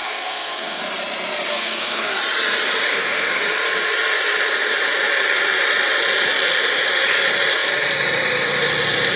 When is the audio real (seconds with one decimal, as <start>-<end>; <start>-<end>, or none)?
0.8-1.5; 2.2-2.9; 3.4-9.2